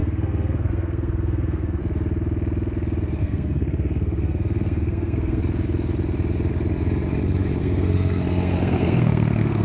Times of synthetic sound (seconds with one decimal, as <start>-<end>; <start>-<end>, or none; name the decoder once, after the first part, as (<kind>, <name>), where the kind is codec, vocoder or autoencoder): 0.0-1.8 (codec, SNAC); 3.2-5.4; 7.6-9.6